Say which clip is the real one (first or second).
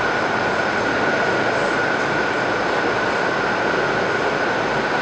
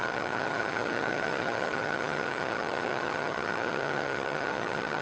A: first